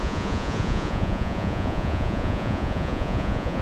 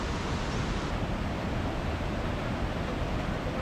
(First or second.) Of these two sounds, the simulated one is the first